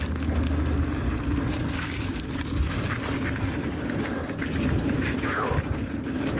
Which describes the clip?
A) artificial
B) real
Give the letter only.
B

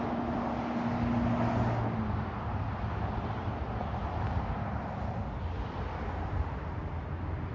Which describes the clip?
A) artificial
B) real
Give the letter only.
B